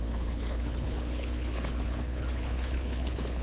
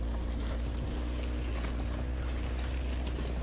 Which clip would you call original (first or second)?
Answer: second